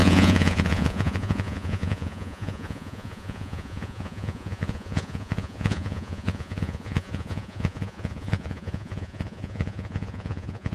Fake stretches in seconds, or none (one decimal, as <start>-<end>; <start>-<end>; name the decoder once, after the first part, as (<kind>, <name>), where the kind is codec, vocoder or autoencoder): 0.0-10.7 (vocoder, Vocos)